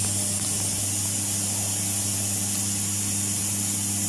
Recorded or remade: recorded